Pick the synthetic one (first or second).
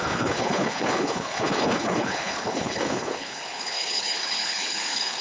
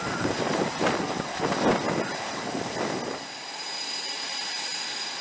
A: first